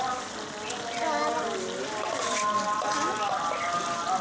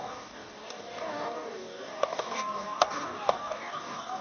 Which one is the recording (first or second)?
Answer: first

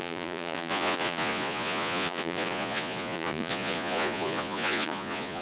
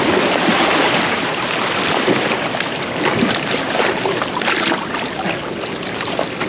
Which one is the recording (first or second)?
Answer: second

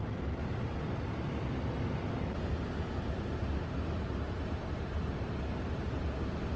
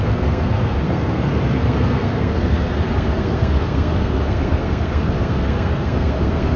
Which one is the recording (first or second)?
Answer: first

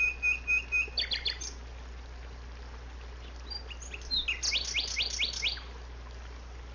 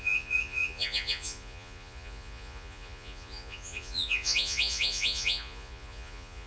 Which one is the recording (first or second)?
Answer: first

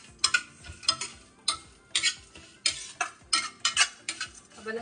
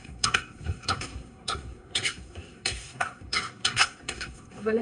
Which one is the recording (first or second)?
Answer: first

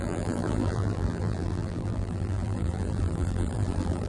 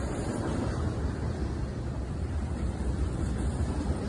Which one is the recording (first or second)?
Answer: second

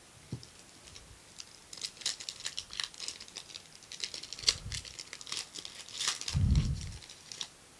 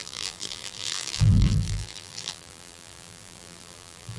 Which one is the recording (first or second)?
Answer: first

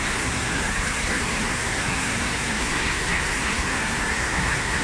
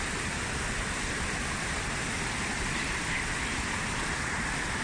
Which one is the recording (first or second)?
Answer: second